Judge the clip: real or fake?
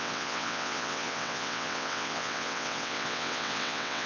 fake